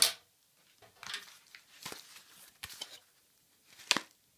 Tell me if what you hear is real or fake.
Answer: real